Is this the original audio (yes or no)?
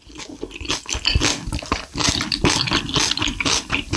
yes